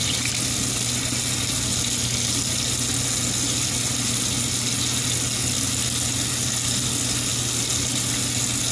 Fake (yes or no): no